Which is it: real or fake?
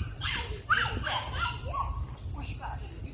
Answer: fake